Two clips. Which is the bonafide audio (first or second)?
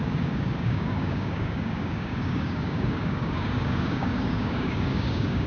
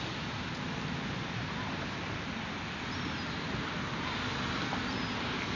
second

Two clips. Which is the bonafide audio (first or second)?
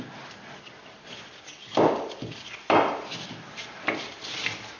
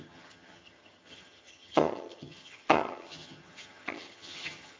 first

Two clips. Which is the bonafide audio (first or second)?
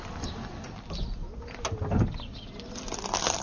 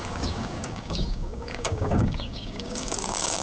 first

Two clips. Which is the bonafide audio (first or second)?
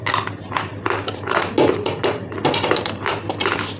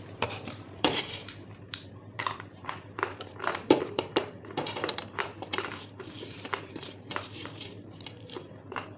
first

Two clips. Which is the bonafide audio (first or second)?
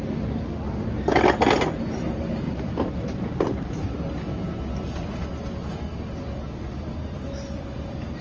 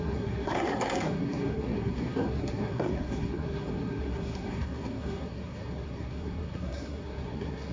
first